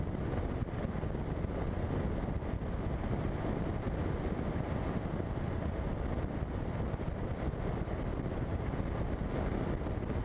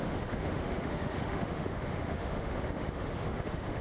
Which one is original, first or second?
first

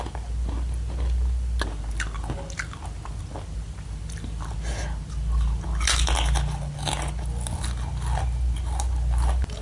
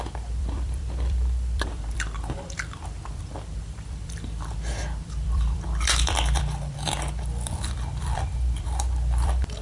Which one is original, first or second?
first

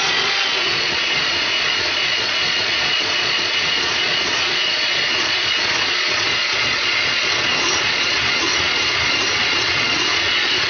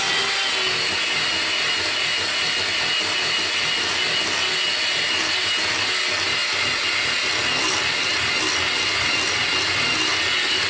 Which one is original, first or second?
second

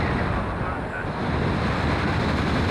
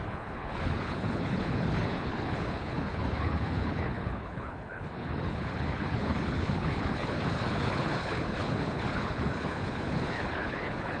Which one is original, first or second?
first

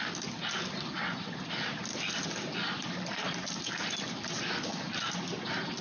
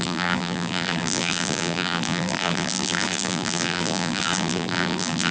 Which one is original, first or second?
first